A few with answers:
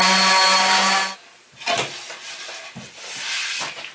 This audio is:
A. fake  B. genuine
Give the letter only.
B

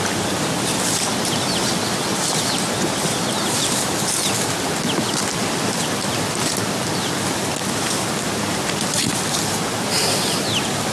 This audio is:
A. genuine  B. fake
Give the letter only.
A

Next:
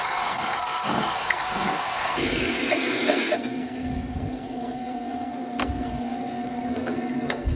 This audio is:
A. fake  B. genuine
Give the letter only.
A